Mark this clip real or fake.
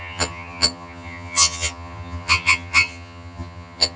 fake